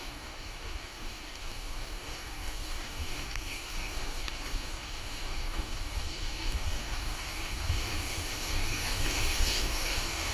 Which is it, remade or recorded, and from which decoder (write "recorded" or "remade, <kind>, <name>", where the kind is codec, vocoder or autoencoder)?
remade, codec, DAC